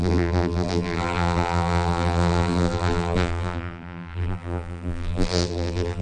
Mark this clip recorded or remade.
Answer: remade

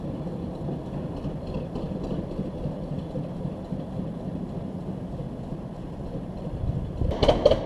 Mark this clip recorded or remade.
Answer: recorded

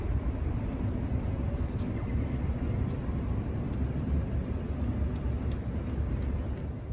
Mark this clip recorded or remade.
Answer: recorded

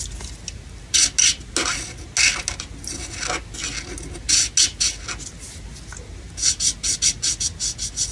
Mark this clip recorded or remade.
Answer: recorded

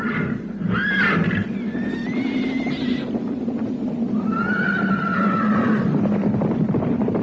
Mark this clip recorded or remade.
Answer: recorded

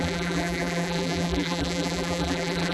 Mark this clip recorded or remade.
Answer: remade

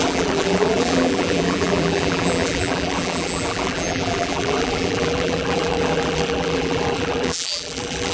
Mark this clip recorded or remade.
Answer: remade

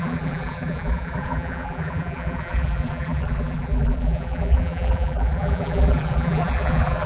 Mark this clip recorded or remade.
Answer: remade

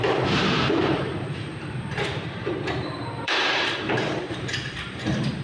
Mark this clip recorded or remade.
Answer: remade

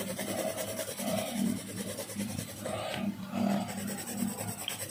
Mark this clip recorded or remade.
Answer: remade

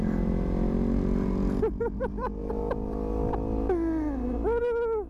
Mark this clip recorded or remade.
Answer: recorded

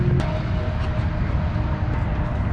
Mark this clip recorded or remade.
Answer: recorded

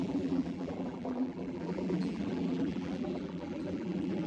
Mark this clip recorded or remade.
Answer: remade